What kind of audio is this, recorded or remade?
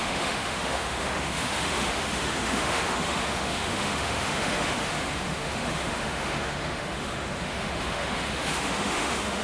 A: remade